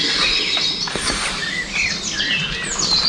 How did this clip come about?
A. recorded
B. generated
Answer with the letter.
A